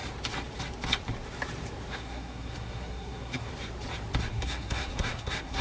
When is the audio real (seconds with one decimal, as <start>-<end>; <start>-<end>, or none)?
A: 0.0-1.9; 3.5-4.3